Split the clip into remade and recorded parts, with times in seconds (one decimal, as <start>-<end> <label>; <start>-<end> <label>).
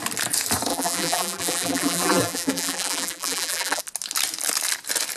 0.0-0.7 recorded; 0.7-3.8 remade; 3.8-5.2 recorded